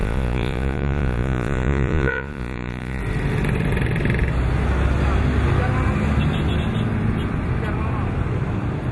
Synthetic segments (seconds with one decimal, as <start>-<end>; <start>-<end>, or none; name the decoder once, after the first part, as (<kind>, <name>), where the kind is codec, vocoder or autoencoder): 0.0-3.0 (vocoder, Vocos)